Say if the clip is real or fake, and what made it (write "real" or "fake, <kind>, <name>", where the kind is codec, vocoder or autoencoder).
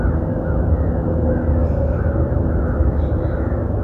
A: real